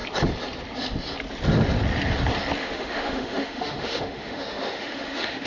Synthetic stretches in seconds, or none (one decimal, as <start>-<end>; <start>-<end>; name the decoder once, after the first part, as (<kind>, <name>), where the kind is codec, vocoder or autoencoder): 2.6-5.5 (autoencoder, DAC-VAE)